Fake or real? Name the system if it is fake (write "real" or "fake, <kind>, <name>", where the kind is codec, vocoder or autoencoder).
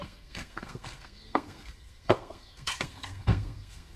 fake, codec, SNAC